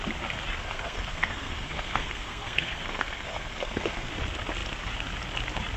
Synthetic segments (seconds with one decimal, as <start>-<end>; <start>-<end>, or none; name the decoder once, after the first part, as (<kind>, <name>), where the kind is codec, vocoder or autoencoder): 0.6-4.1 (codec, SNAC)